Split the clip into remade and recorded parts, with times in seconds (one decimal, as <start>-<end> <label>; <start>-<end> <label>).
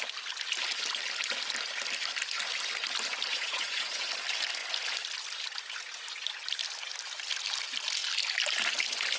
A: 0.0-3.3 recorded; 3.3-4.1 remade; 4.1-9.2 recorded